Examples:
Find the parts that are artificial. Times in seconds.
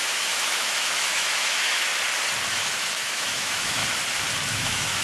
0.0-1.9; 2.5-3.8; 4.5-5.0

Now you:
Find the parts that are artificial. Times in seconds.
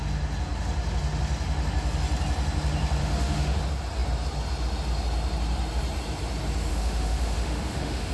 3.0-3.6; 6.7-8.1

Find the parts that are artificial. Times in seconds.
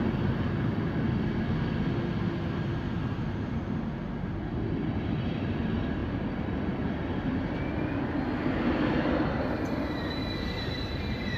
none